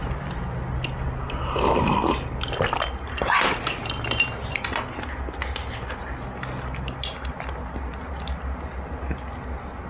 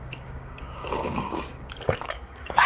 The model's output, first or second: second